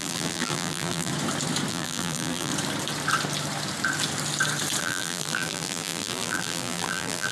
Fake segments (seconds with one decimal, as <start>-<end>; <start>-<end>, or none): 0.0-1.1; 1.7-2.5; 4.8-7.3